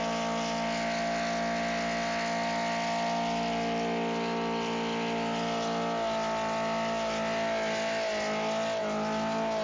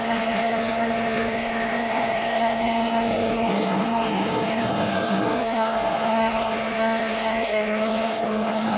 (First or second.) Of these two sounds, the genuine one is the first